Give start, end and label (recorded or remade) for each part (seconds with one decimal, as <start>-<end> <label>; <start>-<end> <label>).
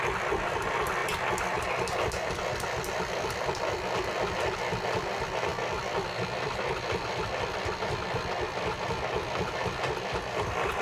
0.0-10.8 recorded